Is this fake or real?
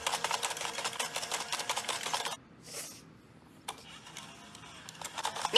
real